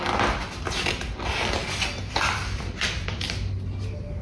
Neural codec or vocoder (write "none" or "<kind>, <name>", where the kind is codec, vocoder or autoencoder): none